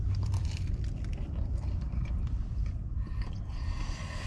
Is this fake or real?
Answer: fake